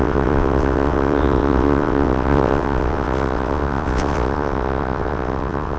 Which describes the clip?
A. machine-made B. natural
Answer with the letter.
A